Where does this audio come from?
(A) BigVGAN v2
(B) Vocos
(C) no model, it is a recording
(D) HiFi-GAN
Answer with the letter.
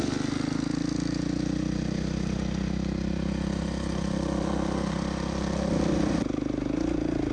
C